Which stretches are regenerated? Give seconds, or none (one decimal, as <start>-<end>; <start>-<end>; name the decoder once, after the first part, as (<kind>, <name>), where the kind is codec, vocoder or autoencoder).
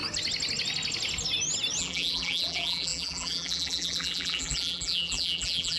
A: 1.8-5.8 (vocoder, BigVGAN v2)